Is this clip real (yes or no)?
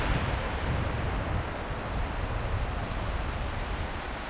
no